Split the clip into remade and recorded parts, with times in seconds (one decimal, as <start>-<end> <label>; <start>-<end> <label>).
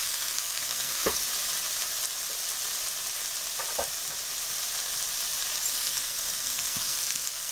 0.0-1.2 remade; 1.2-5.7 recorded; 5.7-7.5 remade